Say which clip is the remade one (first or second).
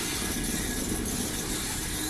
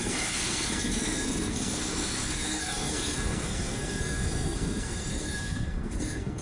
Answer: second